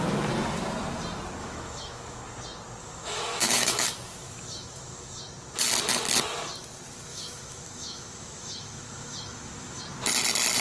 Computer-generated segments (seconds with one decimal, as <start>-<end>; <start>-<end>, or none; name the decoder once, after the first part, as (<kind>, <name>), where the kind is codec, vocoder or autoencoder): 1.4-2.2 (autoencoder, DAC-VAE); 2.8-5.2; 7.1-9.8